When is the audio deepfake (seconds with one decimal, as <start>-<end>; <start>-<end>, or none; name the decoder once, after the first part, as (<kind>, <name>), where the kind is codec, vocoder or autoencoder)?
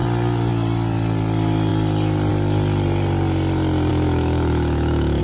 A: 3.9-5.2 (autoencoder, DAC-VAE)